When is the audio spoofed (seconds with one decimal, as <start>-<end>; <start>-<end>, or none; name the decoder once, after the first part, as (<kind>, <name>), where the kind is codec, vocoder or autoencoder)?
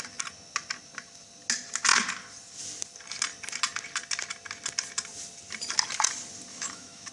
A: 6.5-7.1 (autoencoder, DAC-VAE)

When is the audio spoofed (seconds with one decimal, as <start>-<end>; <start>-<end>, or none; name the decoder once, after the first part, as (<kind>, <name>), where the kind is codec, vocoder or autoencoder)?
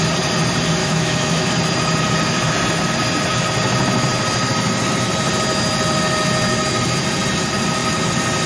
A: 0.8-1.5 (autoencoder, DAC-VAE)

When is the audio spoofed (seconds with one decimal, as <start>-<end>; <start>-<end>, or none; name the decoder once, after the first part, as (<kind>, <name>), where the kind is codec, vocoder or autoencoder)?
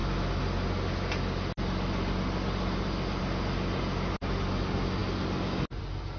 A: none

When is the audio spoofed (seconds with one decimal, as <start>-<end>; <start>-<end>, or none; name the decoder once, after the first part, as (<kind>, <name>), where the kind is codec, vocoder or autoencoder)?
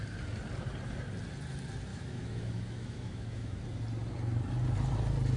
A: 1.9-3.6 (autoencoder, DAC-VAE)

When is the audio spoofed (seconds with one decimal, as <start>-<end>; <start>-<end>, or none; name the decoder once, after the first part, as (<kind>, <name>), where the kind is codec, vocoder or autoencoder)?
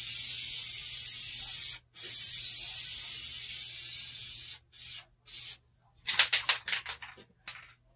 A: none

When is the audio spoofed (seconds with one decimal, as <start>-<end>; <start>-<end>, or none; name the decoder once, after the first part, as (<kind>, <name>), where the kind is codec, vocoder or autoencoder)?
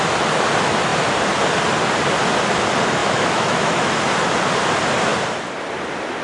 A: 3.0-3.9 (autoencoder, DAC-VAE)